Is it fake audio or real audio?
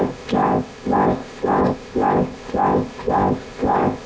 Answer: fake